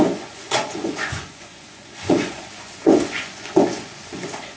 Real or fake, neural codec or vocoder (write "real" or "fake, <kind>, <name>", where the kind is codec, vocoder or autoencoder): fake, vocoder, Vocos